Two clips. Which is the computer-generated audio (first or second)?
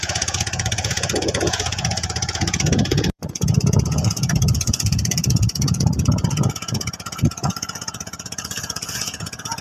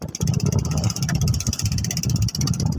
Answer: first